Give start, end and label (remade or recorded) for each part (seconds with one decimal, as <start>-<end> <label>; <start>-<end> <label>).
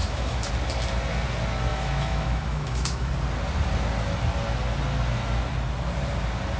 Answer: 0.0-0.5 remade; 0.5-1.7 recorded; 1.7-3.1 remade; 3.1-6.6 recorded